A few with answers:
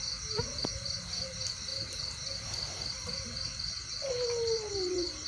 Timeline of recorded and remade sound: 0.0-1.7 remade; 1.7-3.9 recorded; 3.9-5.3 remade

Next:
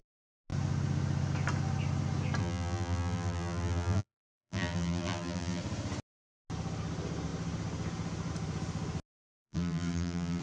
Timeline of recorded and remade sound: 0.0-2.4 recorded; 2.4-5.6 remade; 5.6-9.2 recorded; 9.2-10.4 remade

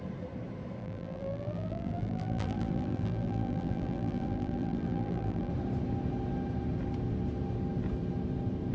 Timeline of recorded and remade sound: 0.0-0.8 recorded; 0.8-5.5 remade; 5.5-8.7 recorded

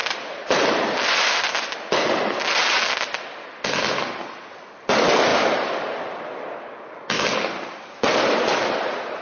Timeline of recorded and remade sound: 0.0-1.4 remade; 1.4-5.3 recorded; 5.3-5.9 remade; 5.9-9.2 recorded